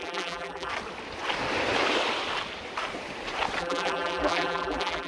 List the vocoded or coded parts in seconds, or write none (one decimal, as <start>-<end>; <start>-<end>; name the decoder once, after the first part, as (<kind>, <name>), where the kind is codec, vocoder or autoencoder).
0.0-0.7 (vocoder, BigVGAN v2); 3.6-5.1